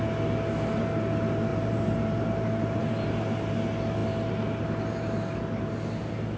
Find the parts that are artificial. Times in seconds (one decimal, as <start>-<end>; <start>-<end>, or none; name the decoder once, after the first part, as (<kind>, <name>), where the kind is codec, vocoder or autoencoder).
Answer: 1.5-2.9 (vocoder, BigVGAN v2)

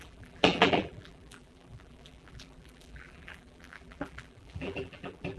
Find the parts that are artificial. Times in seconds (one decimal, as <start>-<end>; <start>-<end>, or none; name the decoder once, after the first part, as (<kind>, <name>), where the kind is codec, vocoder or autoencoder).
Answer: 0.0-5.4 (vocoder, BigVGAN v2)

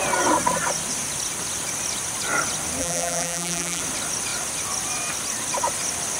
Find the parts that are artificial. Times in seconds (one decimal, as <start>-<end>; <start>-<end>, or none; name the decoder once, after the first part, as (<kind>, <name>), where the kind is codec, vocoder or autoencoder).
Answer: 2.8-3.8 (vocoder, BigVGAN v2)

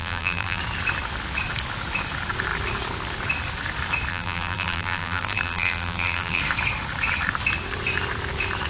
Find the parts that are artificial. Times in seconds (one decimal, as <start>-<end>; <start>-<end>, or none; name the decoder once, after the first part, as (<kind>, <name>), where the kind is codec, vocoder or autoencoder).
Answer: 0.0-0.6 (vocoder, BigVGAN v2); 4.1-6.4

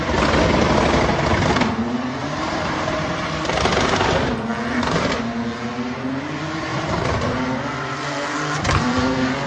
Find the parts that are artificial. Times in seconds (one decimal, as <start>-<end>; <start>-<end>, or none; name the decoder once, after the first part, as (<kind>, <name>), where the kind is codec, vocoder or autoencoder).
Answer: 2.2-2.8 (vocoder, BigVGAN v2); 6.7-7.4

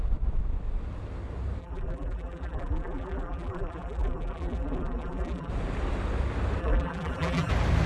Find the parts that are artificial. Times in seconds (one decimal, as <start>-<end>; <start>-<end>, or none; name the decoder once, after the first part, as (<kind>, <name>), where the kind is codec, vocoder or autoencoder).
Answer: 1.6-5.5 (vocoder, BigVGAN v2); 6.6-7.5

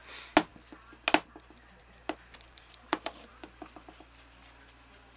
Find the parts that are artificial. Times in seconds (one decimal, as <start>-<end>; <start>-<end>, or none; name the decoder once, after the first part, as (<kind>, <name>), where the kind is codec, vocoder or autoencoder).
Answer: 2.5-3.3 (vocoder, BigVGAN v2)

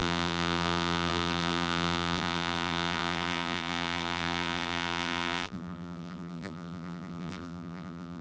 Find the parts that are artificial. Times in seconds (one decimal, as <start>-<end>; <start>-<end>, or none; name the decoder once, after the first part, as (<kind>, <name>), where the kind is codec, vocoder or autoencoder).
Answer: 0.0-8.2 (vocoder, BigVGAN v2)